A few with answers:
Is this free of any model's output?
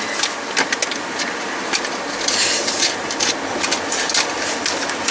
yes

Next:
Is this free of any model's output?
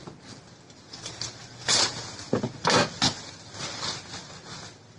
yes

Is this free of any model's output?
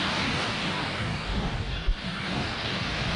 no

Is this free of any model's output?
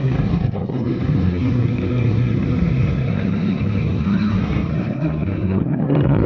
no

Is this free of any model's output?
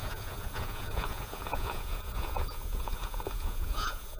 no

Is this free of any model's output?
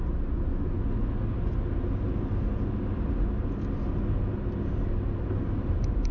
yes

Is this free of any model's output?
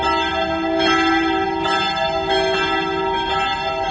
yes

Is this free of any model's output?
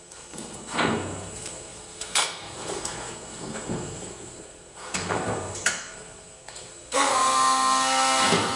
no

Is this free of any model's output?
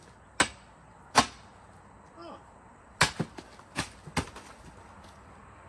yes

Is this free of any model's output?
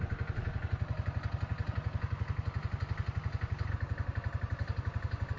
yes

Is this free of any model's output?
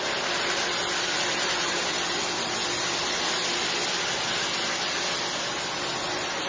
yes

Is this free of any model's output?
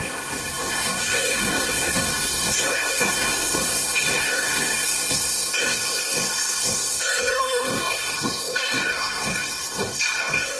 no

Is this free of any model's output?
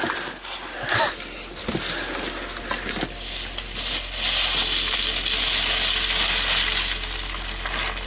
yes